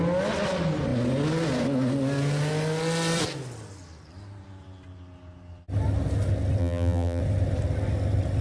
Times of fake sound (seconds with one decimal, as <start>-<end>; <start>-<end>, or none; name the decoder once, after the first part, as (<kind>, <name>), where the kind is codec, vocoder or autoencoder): 6.6-7.2 (vocoder, BigVGAN v2)